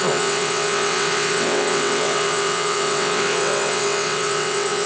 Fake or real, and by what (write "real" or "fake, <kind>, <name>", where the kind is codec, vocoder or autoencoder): fake, vocoder, WaveNeXt